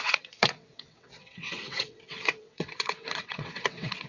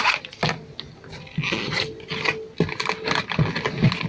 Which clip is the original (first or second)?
second